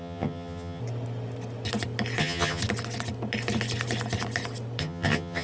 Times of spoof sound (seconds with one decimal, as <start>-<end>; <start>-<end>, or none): 0.0-0.8; 2.2-2.6; 4.8-5.4